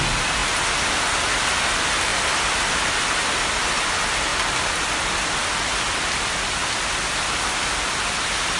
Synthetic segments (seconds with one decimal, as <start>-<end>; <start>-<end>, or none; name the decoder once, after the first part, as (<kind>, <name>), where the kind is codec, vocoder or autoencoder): none